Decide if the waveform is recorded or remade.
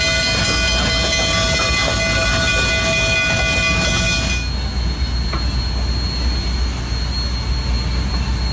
recorded